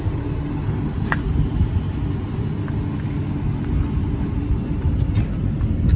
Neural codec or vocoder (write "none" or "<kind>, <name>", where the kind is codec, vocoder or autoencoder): none